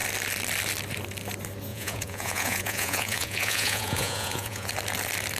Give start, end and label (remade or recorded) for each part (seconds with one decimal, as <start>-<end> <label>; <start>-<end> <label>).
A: 0.0-1.7 recorded; 1.7-4.7 remade; 4.7-5.4 recorded